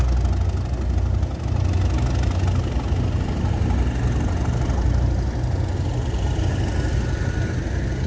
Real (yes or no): yes